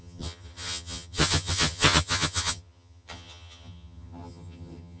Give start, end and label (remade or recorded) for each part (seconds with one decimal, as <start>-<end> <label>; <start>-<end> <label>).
0.0-5.0 remade